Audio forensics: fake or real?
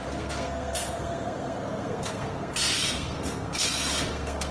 fake